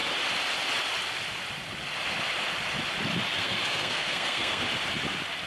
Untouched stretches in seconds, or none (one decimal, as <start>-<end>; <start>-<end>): 0.0-3.4; 4.6-5.5